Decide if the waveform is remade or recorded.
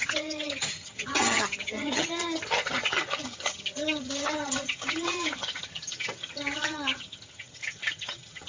remade